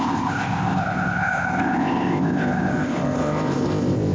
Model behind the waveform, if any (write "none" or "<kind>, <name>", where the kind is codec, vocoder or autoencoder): codec, ZipCodec